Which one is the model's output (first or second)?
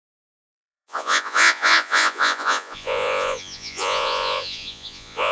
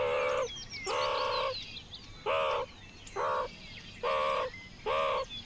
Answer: first